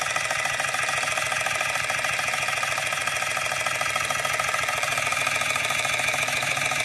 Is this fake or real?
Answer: real